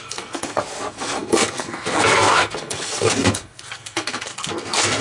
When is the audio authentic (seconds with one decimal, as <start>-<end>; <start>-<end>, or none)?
none